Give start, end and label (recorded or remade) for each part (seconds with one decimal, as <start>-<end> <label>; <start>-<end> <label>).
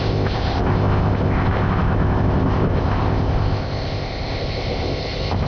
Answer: 0.0-5.5 remade